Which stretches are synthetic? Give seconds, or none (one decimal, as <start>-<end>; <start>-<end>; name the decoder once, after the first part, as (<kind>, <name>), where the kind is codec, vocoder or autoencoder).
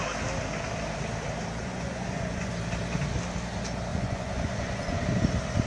1.6-2.5 (vocoder, Vocos); 3.9-5.0